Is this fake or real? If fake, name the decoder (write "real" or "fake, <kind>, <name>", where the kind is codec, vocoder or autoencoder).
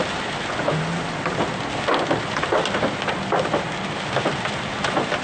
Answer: real